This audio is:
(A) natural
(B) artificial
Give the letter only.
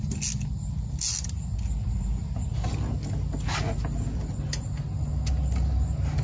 A